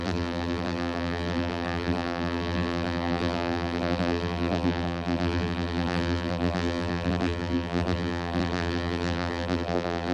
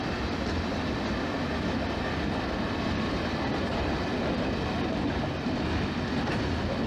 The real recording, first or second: second